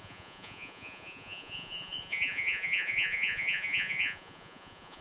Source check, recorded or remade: remade